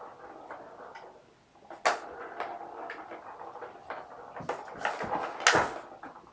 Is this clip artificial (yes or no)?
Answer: no